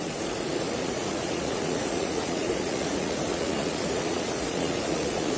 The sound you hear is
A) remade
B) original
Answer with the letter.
A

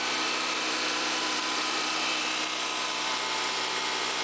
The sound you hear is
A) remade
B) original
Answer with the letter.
A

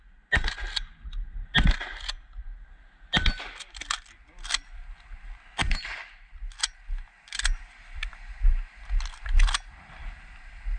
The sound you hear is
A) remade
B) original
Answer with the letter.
B